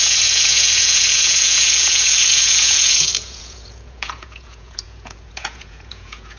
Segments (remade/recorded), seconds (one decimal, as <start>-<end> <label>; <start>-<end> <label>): 0.0-6.4 remade